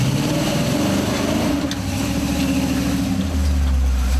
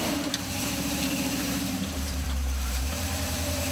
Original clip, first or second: first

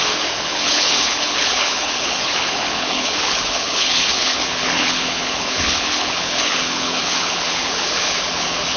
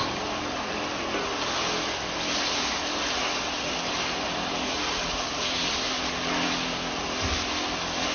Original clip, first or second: second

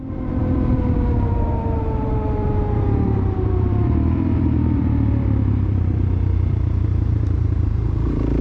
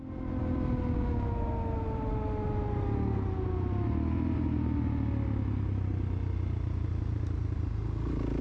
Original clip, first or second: second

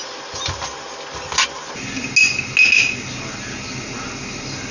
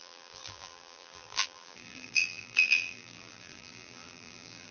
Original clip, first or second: first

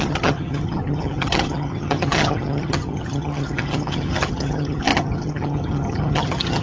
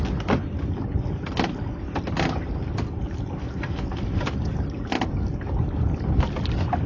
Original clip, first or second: second